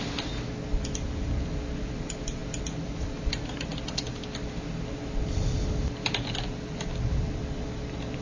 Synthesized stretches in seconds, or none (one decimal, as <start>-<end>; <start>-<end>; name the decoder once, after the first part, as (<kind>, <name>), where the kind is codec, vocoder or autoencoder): none